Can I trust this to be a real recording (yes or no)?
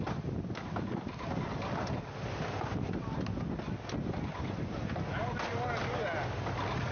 yes